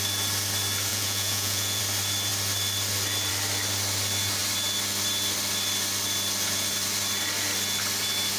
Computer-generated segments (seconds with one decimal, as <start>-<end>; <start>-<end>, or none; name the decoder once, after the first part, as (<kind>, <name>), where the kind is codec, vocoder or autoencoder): 0.9-1.8 (vocoder, Vocos)